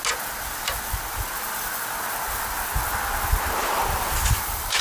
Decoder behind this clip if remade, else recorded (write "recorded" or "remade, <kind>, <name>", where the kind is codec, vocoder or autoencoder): recorded